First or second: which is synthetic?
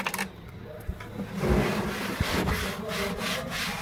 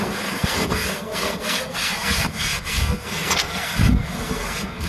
second